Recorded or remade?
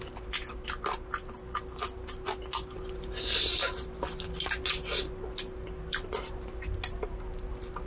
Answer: recorded